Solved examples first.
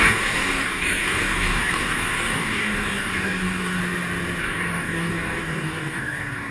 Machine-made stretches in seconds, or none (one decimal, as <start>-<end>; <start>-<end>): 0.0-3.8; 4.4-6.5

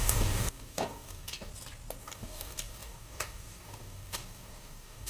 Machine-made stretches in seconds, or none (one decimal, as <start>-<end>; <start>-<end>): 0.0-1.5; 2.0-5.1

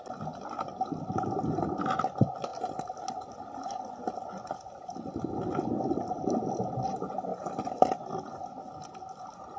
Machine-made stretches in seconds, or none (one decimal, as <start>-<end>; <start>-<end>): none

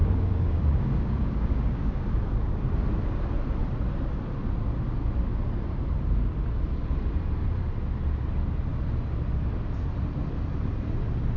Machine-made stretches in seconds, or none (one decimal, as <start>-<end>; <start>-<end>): 0.0-2.0

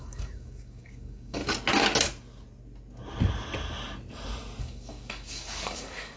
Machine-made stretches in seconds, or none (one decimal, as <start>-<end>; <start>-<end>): 0.0-1.4; 4.6-6.2

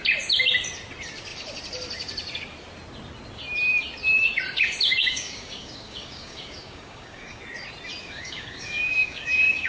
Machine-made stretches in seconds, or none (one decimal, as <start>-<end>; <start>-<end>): 4.9-7.4; 8.0-9.7